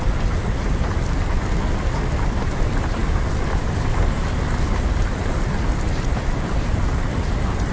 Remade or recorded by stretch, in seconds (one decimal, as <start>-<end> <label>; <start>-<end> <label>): 0.0-7.7 recorded